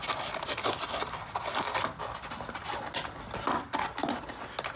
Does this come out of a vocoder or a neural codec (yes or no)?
no